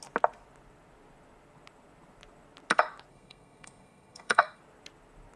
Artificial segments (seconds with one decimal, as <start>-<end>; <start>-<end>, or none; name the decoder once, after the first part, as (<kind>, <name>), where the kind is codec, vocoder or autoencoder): 3.1-4.6 (codec, SNAC)